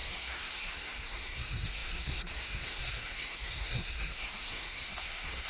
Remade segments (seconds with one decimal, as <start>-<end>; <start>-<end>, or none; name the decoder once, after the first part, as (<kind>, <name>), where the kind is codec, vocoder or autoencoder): 0.0-5.5 (codec, SNAC)